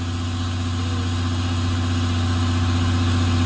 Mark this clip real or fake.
real